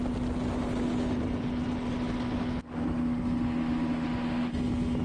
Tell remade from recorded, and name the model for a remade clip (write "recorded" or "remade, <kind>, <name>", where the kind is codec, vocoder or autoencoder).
recorded